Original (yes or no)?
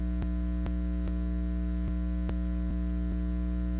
yes